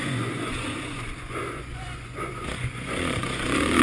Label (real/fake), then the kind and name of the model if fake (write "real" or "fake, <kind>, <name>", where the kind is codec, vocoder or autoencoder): fake, vocoder, Vocos